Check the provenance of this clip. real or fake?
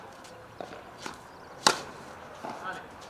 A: real